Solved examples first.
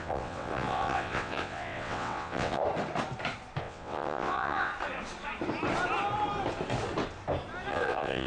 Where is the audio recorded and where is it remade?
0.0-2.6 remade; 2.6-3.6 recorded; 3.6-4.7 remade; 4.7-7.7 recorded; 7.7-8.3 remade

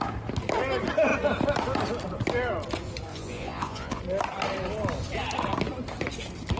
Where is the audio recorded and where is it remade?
0.0-3.1 recorded; 3.1-4.0 remade; 4.0-6.6 recorded

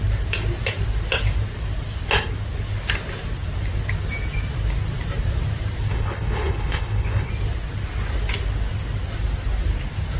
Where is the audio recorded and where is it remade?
0.0-5.9 recorded; 5.9-7.3 remade; 7.3-10.2 recorded

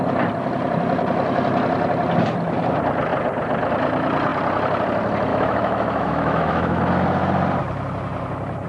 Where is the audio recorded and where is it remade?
0.0-5.3 recorded; 5.3-6.8 remade; 6.8-8.7 recorded